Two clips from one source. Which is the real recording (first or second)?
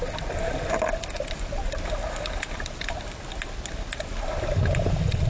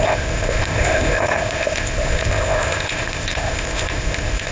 first